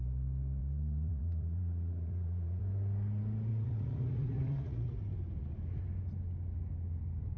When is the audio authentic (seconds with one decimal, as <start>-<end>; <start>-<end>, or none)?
0.0-0.6; 2.6-3.5; 4.9-7.4